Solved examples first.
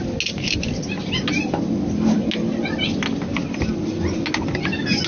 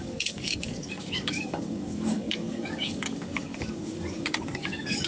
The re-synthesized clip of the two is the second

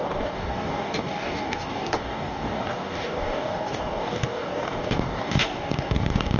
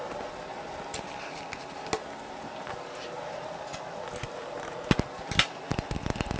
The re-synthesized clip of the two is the first